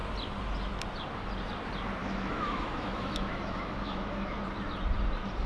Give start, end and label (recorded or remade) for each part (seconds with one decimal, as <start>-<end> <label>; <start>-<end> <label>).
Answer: 0.0-2.0 recorded; 2.0-4.4 remade; 4.4-5.5 recorded